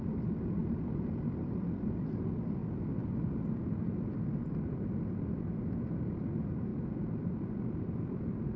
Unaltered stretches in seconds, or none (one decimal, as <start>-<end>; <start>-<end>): 2.6-5.2; 6.7-7.7